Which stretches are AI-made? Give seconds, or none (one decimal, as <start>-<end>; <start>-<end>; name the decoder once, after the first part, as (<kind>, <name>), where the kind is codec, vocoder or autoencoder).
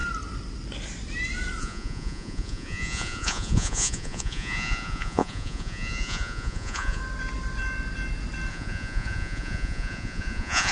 1.6-7.0 (vocoder, Vocos); 8.5-10.7